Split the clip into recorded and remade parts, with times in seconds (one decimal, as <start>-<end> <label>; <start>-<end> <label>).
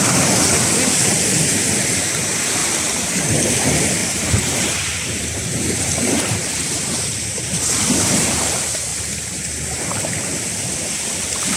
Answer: 0.0-2.6 recorded; 2.6-3.3 remade; 3.3-4.0 recorded; 4.0-7.6 remade; 7.6-11.6 recorded